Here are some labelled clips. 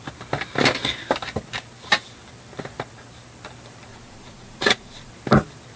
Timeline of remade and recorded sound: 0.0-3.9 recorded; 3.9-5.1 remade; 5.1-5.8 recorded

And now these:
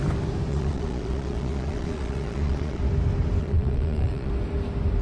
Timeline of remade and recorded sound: 0.0-0.5 recorded; 0.5-2.8 remade; 2.8-3.4 recorded; 3.4-4.3 remade; 4.3-5.0 recorded

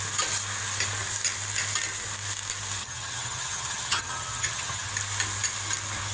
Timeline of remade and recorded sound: 0.0-2.8 recorded; 2.8-4.9 remade; 4.9-6.1 recorded

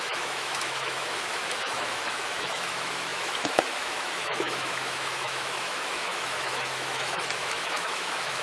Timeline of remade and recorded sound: 0.0-8.4 remade

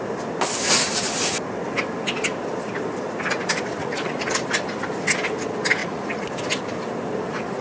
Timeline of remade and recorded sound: 0.0-3.8 recorded; 3.8-4.3 remade; 4.3-5.8 recorded; 5.8-6.3 remade; 6.3-7.6 recorded

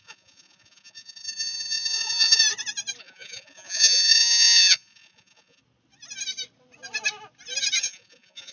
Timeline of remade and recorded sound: 0.0-2.4 remade; 2.4-3.0 recorded; 3.0-5.6 remade; 5.6-7.8 recorded; 7.8-8.5 remade

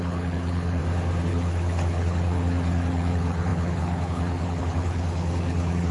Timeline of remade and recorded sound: 0.0-0.8 remade; 0.8-1.3 recorded; 1.3-5.9 remade